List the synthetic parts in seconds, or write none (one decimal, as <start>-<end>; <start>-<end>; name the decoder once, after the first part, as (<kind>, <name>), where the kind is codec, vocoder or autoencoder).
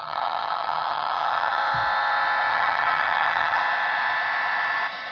0.0-1.6 (vocoder, HiFi-GAN); 2.5-3.6